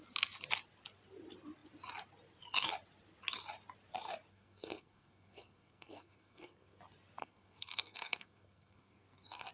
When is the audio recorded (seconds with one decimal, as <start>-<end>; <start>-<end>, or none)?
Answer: 0.0-4.3; 6.8-7.2